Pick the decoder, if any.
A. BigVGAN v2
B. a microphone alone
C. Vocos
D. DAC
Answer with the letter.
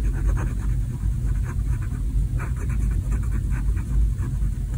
B